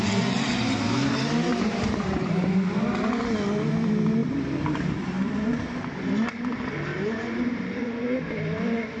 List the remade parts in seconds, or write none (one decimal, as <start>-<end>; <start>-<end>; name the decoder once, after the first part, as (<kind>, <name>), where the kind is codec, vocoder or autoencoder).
1.5-2.5 (vocoder, BigVGAN v2); 6.9-8.3